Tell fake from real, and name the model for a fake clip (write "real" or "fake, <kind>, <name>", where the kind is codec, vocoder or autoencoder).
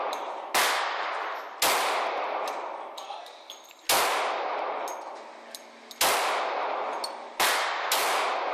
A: real